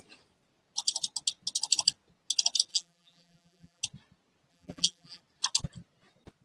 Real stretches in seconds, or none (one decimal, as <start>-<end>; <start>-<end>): 0.0-2.7; 3.8-4.5; 5.2-6.4